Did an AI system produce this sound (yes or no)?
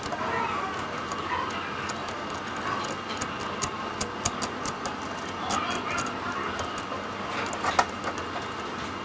no